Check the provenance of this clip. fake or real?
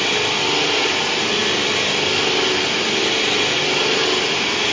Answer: real